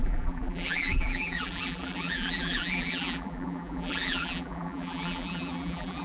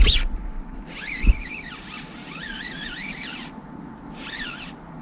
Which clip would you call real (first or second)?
second